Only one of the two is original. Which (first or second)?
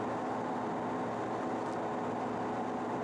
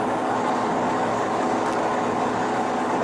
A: first